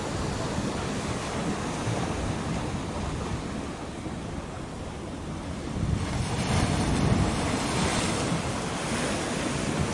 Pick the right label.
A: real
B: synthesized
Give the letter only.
A